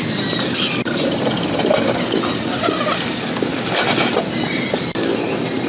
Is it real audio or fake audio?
fake